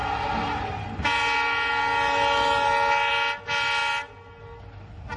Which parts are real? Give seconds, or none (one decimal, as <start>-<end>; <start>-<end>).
0.0-5.2